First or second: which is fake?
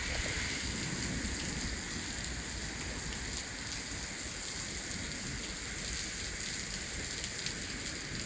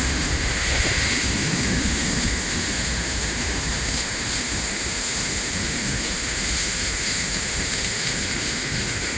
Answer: second